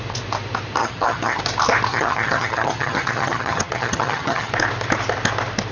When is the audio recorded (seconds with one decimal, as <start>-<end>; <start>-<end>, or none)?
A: 0.0-0.8; 1.4-1.9; 4.5-5.7